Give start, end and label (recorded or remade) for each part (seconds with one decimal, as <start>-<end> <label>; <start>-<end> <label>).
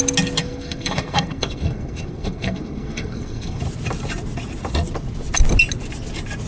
0.0-0.4 recorded; 0.4-3.6 remade; 3.6-6.5 recorded